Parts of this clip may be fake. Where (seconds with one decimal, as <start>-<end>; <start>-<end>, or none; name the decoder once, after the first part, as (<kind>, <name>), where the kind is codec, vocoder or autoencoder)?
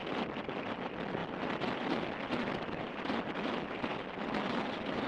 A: none